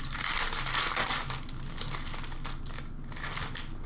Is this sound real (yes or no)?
yes